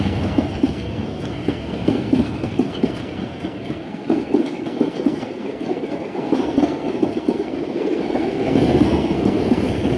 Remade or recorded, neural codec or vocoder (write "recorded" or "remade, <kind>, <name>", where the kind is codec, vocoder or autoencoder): remade, codec, SNAC